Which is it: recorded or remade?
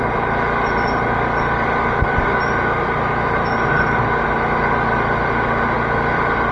recorded